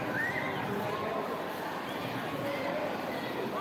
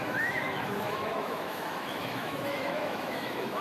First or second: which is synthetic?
second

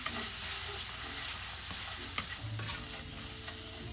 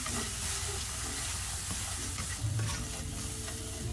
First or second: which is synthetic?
second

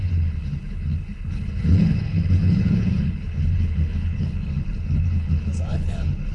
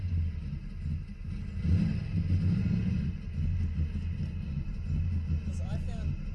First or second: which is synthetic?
first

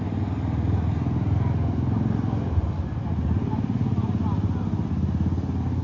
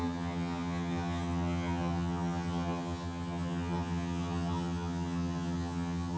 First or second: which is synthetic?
second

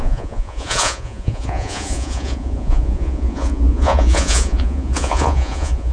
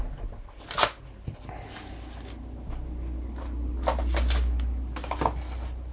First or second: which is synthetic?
first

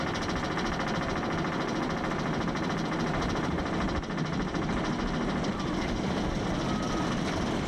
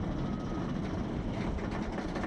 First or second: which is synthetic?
first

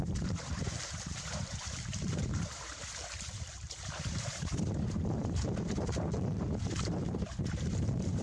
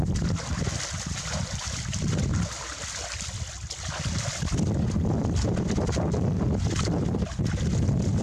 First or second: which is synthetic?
first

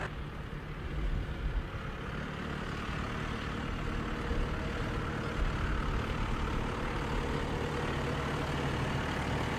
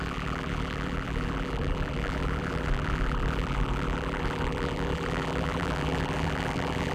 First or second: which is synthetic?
second